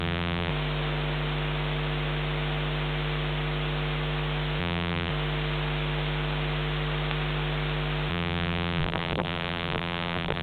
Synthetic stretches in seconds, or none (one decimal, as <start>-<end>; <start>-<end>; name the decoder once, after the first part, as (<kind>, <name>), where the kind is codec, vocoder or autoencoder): 0.0-0.5 (vocoder, BigVGAN v2); 4.6-5.1; 8.1-10.4